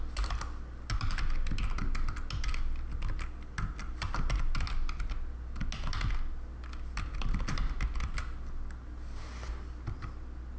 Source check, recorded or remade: recorded